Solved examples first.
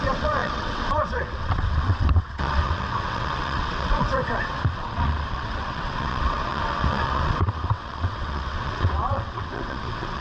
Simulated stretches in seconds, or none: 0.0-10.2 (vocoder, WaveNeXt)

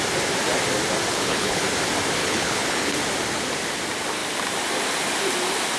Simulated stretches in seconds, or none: 1.1-1.6 (codec, HILCodec); 2.2-3.0

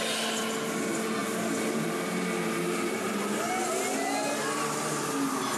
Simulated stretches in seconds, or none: none

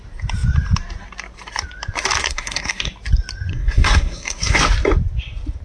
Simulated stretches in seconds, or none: 2.2-2.9 (codec, SNAC); 3.5-4.6

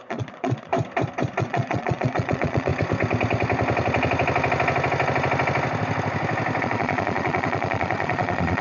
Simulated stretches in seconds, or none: 0.0-0.7 (vocoder, Vocos); 1.4-2.7; 6.6-8.6

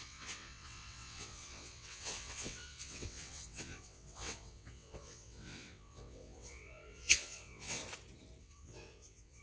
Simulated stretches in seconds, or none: 0.0-7.8 (vocoder, WaveNeXt); 8.4-9.4

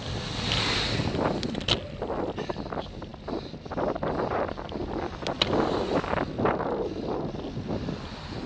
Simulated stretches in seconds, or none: none

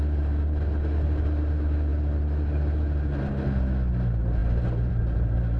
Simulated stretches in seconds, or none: none